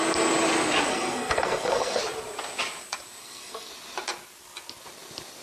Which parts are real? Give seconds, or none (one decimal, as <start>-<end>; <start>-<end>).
0.0-0.9; 2.0-3.2; 3.7-5.4